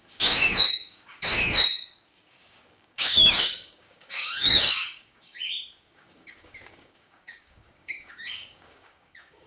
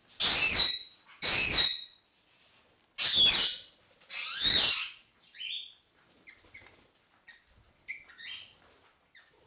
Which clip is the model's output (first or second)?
first